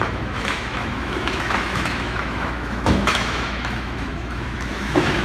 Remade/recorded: remade